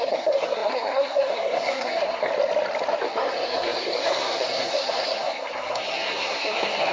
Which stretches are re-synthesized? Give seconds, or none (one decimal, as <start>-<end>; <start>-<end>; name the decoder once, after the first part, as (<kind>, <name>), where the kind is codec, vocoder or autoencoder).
0.0-2.3 (codec, SNAC); 3.0-6.9